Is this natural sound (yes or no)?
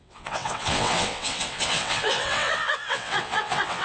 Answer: no